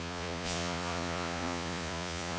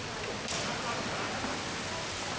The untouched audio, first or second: second